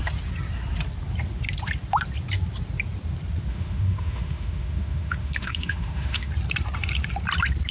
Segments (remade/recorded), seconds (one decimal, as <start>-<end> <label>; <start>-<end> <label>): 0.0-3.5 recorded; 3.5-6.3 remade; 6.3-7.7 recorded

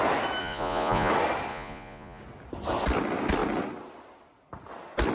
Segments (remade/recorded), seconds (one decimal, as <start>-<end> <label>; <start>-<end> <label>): 0.0-0.4 recorded; 0.4-1.1 remade; 1.1-1.5 recorded; 1.5-2.2 remade; 2.2-5.1 recorded

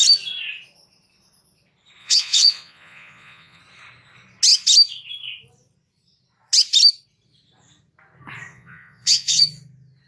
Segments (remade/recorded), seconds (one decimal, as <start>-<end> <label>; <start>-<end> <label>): 0.0-2.0 recorded; 2.0-3.6 remade; 3.6-8.5 recorded; 8.5-9.4 remade; 9.4-10.1 recorded

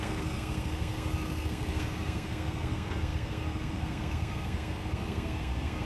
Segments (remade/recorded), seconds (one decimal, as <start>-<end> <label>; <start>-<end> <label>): 0.0-5.9 remade

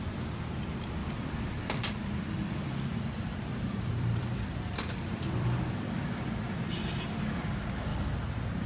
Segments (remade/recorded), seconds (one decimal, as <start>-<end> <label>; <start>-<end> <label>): 0.0-7.9 remade; 7.9-8.7 recorded

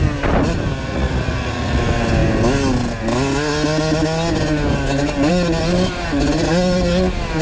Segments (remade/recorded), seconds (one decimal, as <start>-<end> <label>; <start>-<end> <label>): 0.0-0.8 recorded; 0.8-1.8 remade; 1.8-7.4 recorded